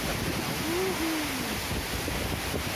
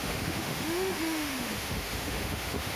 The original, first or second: first